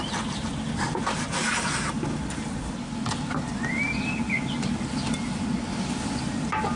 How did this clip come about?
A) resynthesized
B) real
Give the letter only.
B